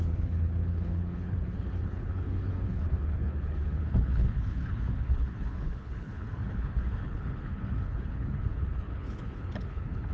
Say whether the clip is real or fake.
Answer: fake